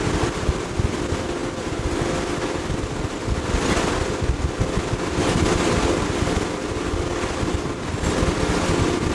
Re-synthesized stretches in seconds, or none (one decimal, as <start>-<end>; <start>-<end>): none